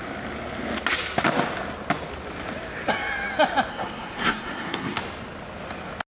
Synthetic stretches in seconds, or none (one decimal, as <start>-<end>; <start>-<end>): 3.7-5.0